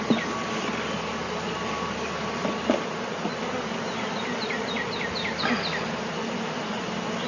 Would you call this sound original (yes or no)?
yes